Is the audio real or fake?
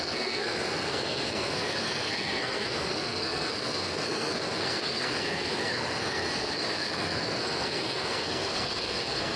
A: fake